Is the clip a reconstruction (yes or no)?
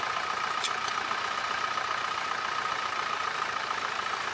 no